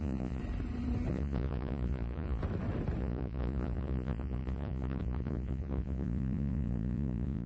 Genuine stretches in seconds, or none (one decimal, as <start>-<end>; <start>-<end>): 0.4-1.1; 2.4-3.0